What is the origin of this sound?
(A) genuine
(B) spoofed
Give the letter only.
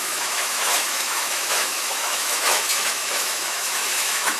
B